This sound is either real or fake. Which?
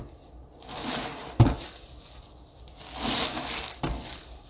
real